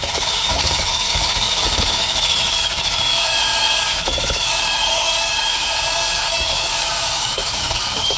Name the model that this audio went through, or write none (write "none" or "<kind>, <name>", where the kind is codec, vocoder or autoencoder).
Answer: codec, DAC